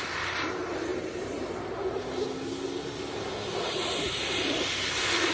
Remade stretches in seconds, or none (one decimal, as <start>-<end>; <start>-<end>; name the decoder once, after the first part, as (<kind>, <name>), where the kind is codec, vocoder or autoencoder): none